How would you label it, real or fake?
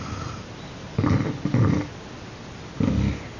real